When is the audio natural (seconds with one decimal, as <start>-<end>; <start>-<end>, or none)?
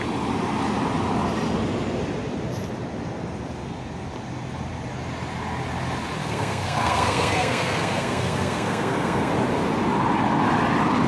0.0-6.2; 9.3-11.1